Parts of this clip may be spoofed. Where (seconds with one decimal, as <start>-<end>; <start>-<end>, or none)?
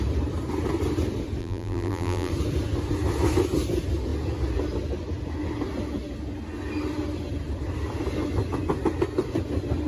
1.4-2.3